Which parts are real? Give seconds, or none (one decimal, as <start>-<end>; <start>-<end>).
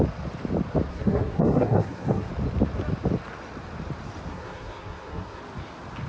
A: 0.0-0.9; 2.3-4.3; 5.4-6.1